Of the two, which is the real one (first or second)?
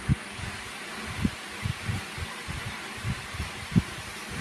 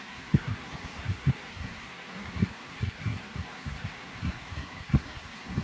first